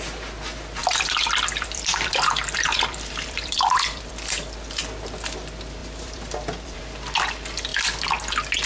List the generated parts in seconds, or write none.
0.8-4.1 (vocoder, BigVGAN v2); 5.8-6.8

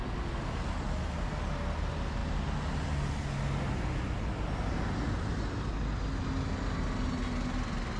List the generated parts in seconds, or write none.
none

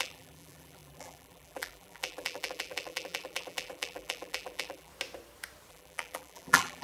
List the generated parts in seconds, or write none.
0.0-4.9 (vocoder, BigVGAN v2); 5.7-6.8